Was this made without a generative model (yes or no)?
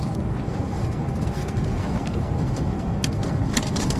no